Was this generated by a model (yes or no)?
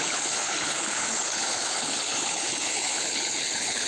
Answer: yes